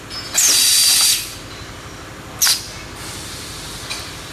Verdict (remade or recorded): recorded